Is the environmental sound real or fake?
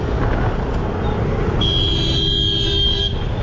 real